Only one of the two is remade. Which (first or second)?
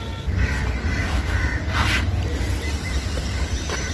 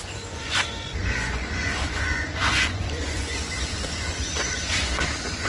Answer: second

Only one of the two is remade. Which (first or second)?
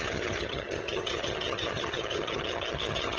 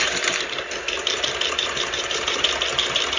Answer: first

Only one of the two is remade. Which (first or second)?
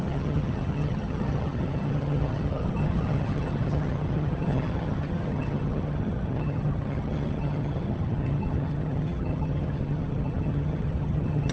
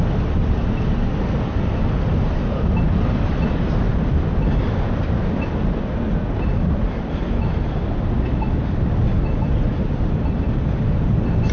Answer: first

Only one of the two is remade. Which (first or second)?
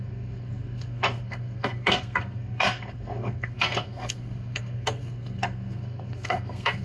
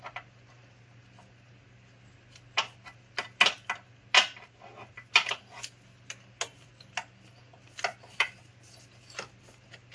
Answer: first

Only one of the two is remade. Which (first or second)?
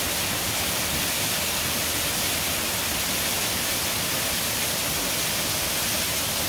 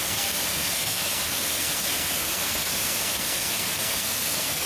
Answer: second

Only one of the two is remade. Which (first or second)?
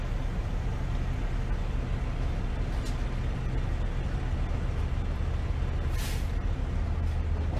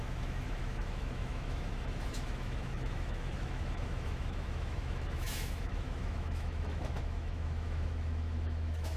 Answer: second